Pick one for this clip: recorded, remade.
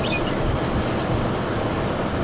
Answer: recorded